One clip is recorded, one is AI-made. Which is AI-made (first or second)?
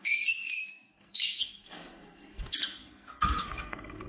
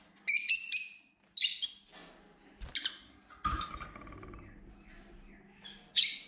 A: first